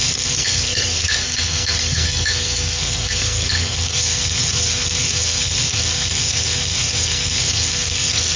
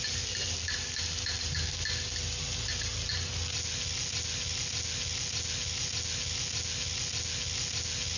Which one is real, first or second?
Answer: second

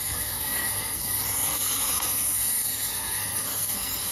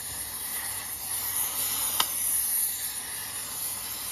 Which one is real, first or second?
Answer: second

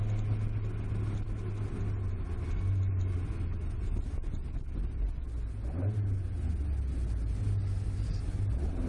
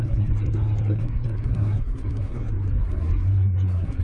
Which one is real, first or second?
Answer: first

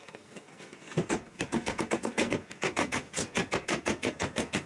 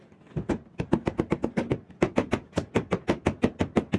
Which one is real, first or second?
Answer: second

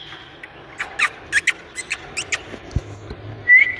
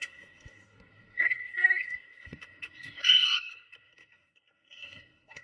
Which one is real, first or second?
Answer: first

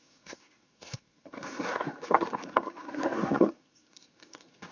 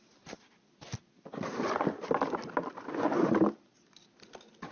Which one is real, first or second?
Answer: second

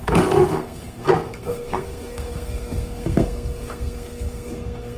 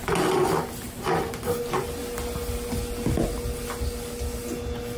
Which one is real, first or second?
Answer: second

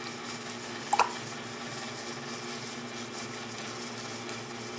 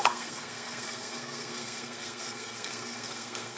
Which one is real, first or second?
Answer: first